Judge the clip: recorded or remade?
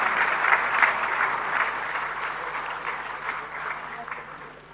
remade